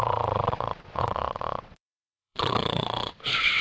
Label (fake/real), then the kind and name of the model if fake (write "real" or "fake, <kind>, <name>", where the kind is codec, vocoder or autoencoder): fake, vocoder, WaveNeXt